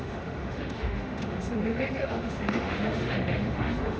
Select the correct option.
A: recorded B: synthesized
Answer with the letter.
B